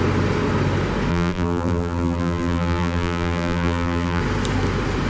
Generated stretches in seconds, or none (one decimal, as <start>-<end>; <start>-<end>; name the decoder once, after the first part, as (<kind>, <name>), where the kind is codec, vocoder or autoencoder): 1.1-4.2 (vocoder, BigVGAN v2)